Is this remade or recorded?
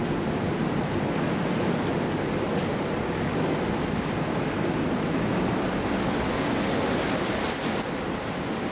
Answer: recorded